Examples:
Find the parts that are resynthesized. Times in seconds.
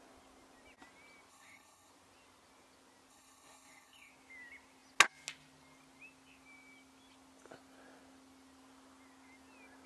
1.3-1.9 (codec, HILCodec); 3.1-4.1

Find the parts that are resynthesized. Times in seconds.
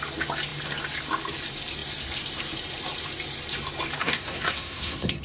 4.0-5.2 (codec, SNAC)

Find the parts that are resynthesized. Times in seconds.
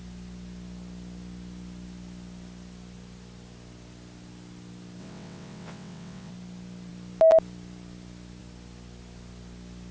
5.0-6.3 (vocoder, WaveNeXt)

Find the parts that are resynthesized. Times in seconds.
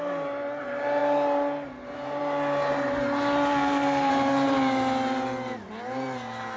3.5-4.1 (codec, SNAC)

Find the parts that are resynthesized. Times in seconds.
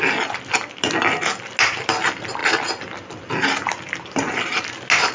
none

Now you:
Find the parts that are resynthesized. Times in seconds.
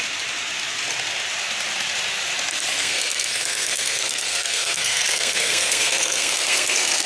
2.8-7.1 (codec, SNAC)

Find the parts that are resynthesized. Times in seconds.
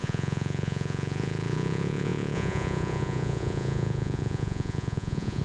0.0-5.4 (vocoder, Vocos)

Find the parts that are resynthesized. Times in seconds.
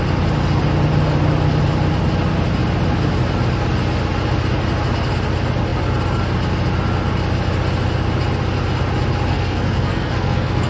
9.3-10.7 (codec, SNAC)